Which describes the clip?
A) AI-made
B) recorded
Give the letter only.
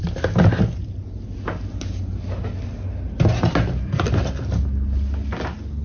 B